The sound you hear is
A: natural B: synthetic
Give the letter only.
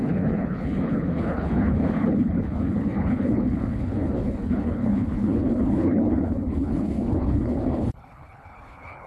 B